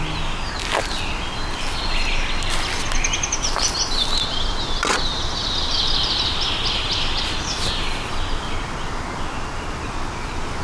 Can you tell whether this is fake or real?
real